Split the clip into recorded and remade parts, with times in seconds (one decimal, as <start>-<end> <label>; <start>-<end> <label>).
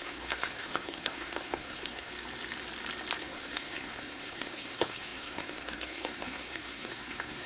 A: 0.0-2.1 remade; 2.1-3.2 recorded; 3.2-7.5 remade